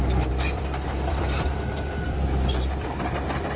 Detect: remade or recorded remade